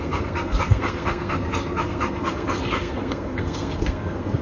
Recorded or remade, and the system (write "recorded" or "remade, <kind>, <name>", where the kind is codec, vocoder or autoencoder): remade, codec, SNAC